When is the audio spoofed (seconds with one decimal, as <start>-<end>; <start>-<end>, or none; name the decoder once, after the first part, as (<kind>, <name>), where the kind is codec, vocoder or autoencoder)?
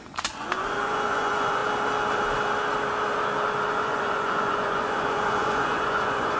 0.0-1.6 (vocoder, Vocos); 3.7-6.4